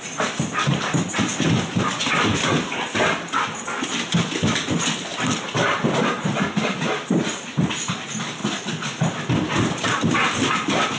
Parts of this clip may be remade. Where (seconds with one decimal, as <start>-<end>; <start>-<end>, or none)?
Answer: none